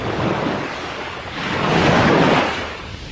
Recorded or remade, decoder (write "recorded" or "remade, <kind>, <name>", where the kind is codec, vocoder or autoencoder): remade, codec, DAC